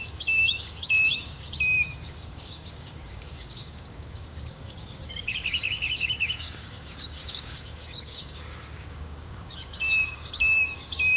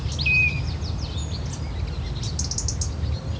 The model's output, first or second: first